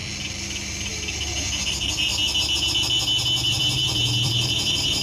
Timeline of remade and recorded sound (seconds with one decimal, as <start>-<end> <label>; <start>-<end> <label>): 0.0-0.9 recorded; 0.9-2.1 remade; 2.1-3.5 recorded; 3.5-5.0 remade

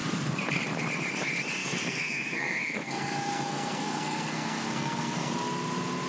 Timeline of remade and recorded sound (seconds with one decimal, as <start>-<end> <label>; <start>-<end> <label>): 0.0-1.6 recorded; 1.6-5.3 remade; 5.3-6.1 recorded